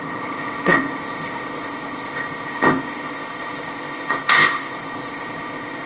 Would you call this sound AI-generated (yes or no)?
yes